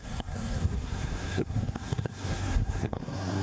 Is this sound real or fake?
fake